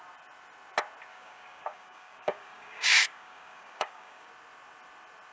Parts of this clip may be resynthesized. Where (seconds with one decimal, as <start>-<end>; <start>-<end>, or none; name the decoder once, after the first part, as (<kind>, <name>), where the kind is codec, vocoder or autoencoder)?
1.1-4.3 (codec, DAC)